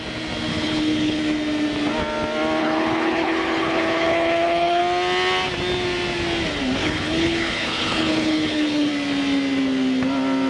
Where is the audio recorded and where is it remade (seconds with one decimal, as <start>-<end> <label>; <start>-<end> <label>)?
0.0-0.5 recorded; 0.5-1.2 remade; 1.2-2.6 recorded; 2.6-4.8 remade; 4.8-6.8 recorded; 6.8-8.9 remade; 8.9-10.5 recorded